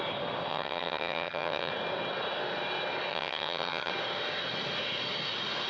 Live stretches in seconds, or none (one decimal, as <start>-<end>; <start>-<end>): 0.0-0.5; 1.7-3.1; 3.9-5.7

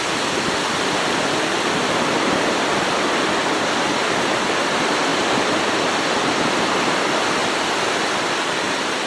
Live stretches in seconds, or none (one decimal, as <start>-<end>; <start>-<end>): 0.0-9.1

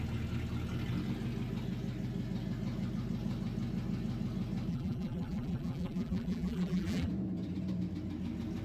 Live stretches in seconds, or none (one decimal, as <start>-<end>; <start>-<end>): 0.0-4.7; 7.1-8.6

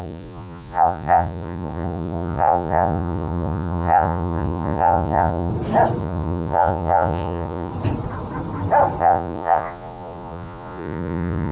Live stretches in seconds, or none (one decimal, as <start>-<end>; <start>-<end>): 5.5-6.0; 7.7-9.0

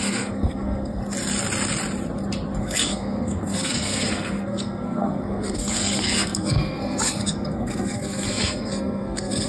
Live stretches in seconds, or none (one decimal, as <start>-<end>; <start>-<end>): 1.0-2.6

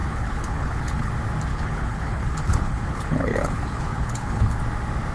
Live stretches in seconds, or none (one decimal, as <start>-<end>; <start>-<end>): 1.1-1.5; 4.6-5.1